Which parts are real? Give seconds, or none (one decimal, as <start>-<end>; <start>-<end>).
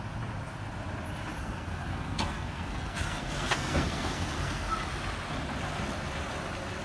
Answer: 0.0-1.4; 4.7-6.8